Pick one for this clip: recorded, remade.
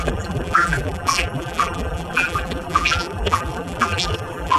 remade